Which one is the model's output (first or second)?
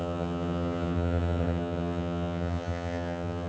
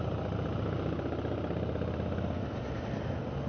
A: first